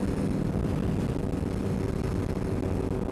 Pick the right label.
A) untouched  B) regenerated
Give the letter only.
A